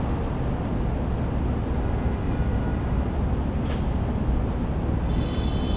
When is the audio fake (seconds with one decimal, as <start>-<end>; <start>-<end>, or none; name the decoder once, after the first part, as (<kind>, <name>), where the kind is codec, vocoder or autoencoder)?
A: none